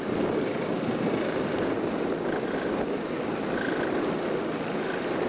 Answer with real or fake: real